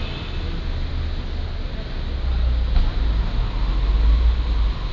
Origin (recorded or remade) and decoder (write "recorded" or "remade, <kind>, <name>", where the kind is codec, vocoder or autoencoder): recorded